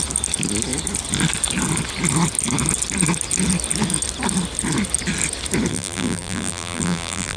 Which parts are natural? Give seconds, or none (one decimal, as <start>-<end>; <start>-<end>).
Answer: 0.0-5.7